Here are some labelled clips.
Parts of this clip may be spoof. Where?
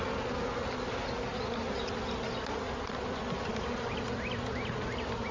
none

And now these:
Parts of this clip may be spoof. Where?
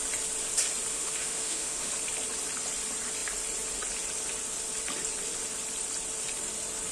0.9-1.9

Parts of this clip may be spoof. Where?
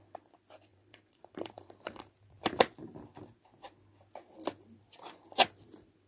0.7-2.4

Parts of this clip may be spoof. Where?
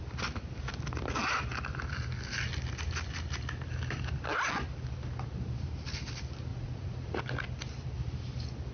6.5-7.2